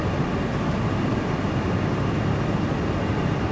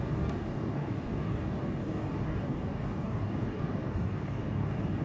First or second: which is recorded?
first